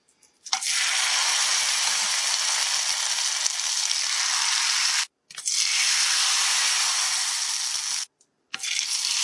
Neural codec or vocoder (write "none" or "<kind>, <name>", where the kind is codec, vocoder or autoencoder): none